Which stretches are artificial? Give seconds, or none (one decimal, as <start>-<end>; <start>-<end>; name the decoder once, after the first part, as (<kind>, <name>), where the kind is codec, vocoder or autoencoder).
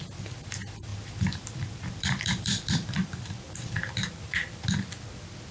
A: 0.9-3.9 (vocoder, BigVGAN v2)